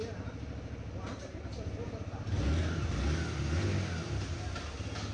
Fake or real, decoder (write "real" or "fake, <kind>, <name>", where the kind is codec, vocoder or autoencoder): real